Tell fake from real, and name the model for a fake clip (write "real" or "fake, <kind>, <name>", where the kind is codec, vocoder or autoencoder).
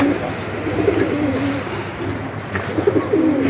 real